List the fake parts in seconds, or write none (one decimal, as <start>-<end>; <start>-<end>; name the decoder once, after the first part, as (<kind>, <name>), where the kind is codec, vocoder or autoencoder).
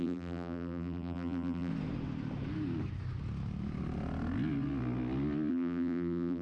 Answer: 0.0-1.7 (vocoder, BigVGAN v2); 5.5-6.4